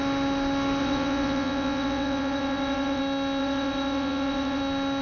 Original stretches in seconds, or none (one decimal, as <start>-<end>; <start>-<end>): 0.0-0.8; 3.0-3.4; 4.6-5.0